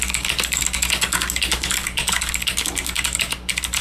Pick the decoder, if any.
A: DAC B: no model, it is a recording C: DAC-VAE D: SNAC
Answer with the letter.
A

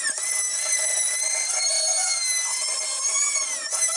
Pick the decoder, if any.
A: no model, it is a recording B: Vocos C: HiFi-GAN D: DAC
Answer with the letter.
A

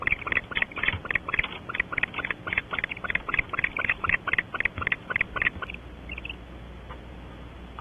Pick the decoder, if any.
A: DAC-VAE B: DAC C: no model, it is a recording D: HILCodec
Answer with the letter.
C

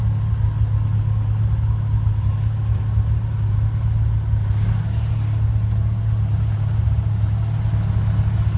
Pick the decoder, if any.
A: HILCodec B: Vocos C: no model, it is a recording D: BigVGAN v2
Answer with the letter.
C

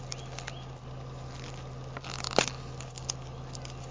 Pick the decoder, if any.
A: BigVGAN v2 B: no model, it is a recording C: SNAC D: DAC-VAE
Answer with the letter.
B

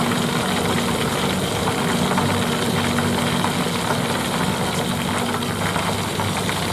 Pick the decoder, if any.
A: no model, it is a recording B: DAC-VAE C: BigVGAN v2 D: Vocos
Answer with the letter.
A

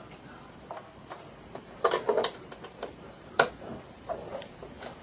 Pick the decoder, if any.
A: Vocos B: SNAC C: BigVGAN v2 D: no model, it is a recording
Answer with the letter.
C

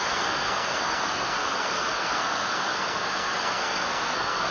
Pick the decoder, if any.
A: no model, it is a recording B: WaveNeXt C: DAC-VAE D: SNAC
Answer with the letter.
D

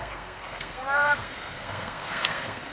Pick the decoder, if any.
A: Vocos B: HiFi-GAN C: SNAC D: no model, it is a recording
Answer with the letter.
C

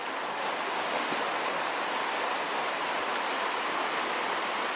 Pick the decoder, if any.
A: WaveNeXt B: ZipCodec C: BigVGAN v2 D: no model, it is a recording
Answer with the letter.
D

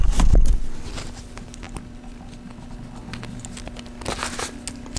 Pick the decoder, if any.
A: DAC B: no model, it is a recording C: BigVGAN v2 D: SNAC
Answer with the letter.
B